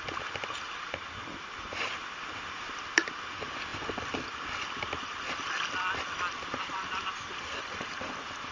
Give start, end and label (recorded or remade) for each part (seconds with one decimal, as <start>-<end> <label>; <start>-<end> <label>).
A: 0.0-8.5 recorded